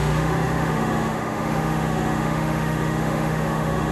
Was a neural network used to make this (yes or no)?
yes